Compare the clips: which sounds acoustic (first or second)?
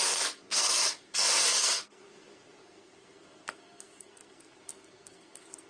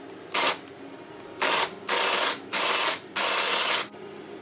second